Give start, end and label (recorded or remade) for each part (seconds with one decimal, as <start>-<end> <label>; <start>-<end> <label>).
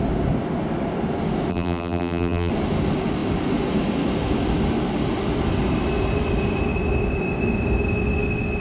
0.0-1.5 recorded; 1.5-2.5 remade; 2.5-8.6 recorded